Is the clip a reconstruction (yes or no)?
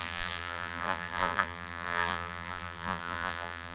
yes